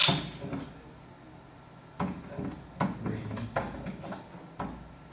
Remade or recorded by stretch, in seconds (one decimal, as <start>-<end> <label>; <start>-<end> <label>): 0.0-5.1 recorded